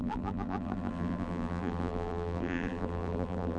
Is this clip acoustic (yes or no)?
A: no